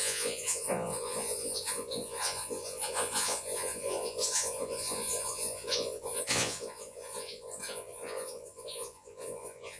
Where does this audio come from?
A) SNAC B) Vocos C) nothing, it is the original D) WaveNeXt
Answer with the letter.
B